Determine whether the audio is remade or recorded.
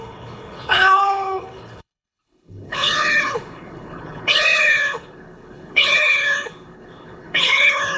remade